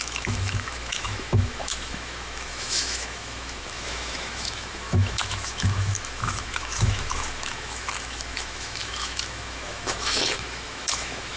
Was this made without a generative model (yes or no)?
no